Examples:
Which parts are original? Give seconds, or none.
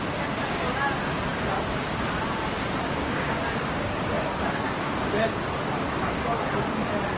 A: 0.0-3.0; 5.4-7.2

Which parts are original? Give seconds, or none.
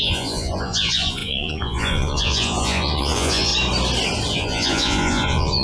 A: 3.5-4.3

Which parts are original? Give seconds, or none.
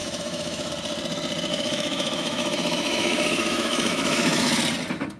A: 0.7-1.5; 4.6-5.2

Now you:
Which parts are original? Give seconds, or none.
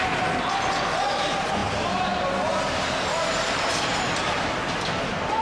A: 0.0-5.4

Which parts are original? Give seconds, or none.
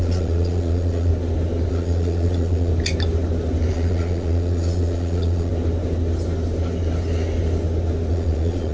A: 1.1-1.7; 2.7-3.7; 5.5-8.1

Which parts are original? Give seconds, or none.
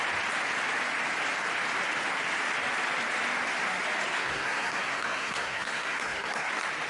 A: 0.0-4.2; 6.5-6.9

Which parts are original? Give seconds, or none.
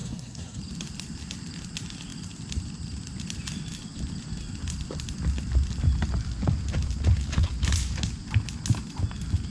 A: 0.6-9.5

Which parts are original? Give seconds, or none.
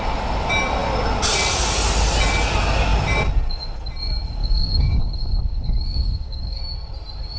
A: 0.0-4.4; 6.6-7.4